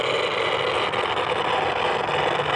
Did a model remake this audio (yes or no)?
no